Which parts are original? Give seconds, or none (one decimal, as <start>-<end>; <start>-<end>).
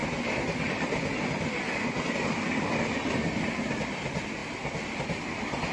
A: 0.0-5.7